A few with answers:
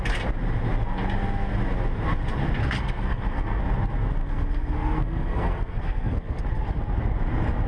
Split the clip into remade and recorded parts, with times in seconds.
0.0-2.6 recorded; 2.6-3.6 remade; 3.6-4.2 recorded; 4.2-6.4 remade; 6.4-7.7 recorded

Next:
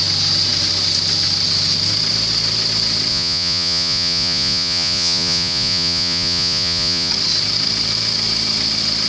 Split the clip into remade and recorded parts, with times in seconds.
0.0-3.1 recorded; 3.1-7.1 remade; 7.1-9.1 recorded

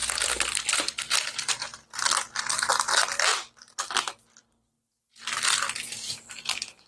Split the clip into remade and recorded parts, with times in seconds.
0.0-0.8 remade; 0.8-3.3 recorded; 3.3-3.9 remade; 3.9-6.9 recorded

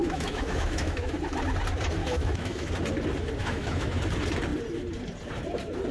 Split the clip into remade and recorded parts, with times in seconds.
0.0-1.1 remade; 1.1-2.0 recorded; 2.0-2.7 remade; 2.7-3.4 recorded; 3.4-4.0 remade; 4.0-5.9 recorded

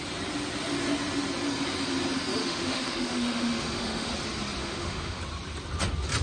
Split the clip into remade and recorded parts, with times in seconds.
0.0-2.4 recorded; 2.4-4.1 remade; 4.1-4.6 recorded; 4.6-5.2 remade; 5.2-6.2 recorded

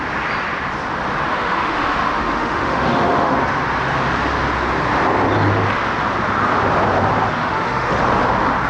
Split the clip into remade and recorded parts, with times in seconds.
0.0-1.3 recorded; 1.3-3.3 remade; 3.3-7.4 recorded; 7.4-8.0 remade; 8.0-8.7 recorded

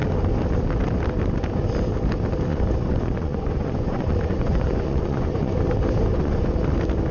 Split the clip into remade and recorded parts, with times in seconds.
0.0-2.5 recorded; 2.5-5.6 remade; 5.6-6.1 recorded; 6.1-6.6 remade; 6.6-7.1 recorded

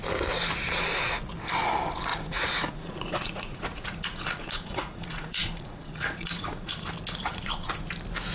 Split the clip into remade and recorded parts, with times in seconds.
0.0-2.1 recorded; 2.1-6.7 remade; 6.7-7.3 recorded; 7.3-7.9 remade; 7.9-8.3 recorded